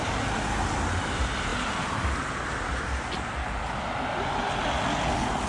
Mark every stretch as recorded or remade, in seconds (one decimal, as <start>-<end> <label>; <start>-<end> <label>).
0.0-5.5 recorded